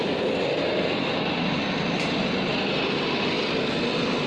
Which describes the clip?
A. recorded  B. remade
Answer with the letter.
A